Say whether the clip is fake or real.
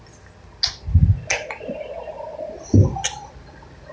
real